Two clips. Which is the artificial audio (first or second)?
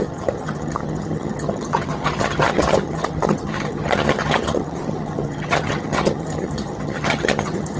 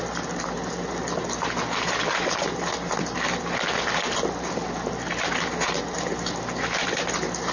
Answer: first